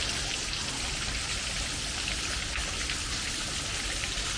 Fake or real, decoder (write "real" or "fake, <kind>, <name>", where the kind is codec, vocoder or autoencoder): real